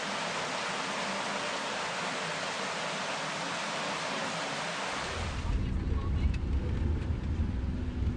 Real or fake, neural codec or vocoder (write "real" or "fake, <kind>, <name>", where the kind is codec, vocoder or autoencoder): real